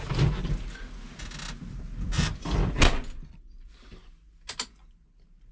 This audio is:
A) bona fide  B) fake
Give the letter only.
A